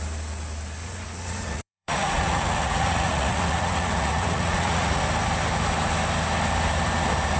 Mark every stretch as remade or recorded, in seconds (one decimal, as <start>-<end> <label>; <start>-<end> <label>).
0.0-0.8 recorded; 0.8-5.0 remade; 5.0-7.4 recorded